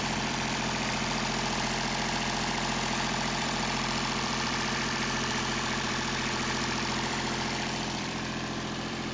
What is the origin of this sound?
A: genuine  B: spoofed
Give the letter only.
B